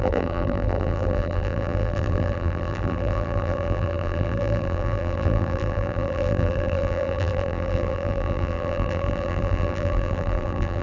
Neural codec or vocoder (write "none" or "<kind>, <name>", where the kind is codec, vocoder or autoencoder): vocoder, BigVGAN v2